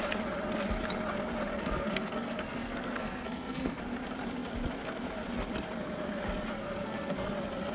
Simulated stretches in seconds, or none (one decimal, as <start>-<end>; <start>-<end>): 1.5-3.8; 6.6-7.3